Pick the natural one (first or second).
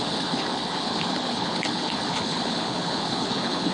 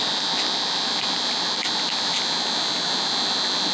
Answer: second